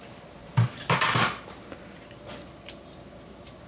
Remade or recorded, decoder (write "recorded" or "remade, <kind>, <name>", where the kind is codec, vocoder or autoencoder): recorded